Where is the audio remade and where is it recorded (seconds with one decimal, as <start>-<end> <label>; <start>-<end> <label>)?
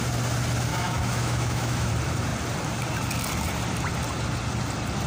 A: 0.0-0.7 recorded; 0.7-1.9 remade; 1.9-5.1 recorded